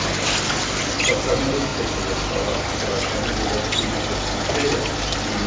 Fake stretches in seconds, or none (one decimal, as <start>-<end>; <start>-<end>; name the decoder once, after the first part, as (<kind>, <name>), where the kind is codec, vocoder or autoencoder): none